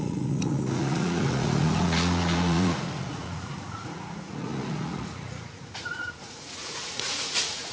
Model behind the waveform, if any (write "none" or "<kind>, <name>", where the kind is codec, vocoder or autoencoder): vocoder, Vocos